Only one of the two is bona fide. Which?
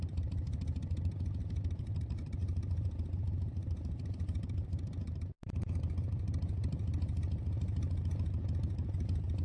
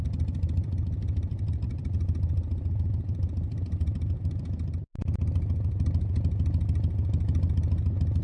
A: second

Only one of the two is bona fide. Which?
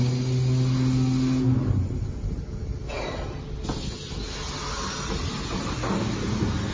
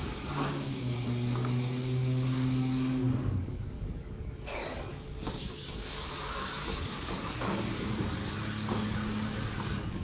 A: first